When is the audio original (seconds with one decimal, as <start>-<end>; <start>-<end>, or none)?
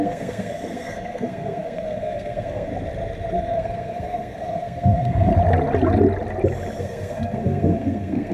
2.7-3.4; 5.3-6.8